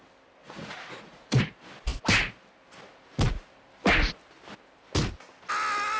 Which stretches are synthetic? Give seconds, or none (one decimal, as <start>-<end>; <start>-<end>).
0.4-1.4